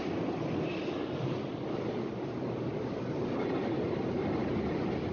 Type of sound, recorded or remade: recorded